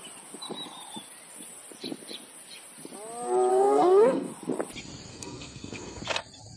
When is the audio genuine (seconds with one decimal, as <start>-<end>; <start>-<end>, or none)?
0.0-3.5; 4.3-5.1; 6.0-6.6